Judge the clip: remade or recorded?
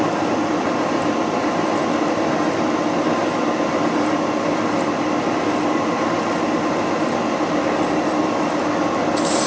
recorded